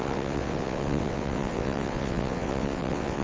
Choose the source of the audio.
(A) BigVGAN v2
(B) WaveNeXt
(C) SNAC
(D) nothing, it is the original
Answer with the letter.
B